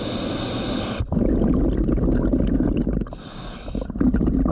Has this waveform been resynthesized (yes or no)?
no